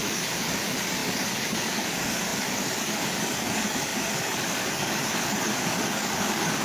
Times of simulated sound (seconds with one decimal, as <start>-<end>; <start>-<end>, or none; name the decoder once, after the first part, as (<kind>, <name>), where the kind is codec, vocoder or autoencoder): 0.0-6.6 (codec, DAC)